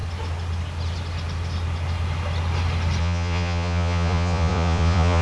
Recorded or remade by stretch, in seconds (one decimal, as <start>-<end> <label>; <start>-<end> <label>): 0.0-3.0 recorded; 3.0-5.2 remade